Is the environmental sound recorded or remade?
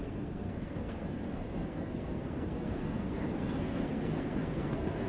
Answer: remade